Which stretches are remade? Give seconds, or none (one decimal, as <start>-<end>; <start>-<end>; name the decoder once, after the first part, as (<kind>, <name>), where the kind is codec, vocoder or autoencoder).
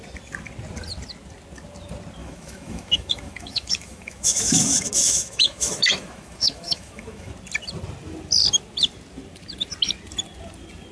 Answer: 2.2-7.3 (autoencoder, DAC-VAE)